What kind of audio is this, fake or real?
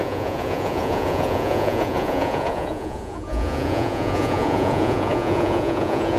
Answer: fake